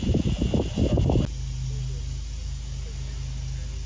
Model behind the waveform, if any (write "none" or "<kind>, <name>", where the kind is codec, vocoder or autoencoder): none